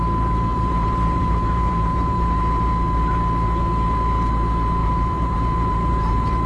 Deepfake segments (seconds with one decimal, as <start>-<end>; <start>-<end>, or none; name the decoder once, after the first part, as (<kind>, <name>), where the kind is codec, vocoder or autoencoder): 0.5-2.4 (vocoder, BigVGAN v2); 4.8-6.5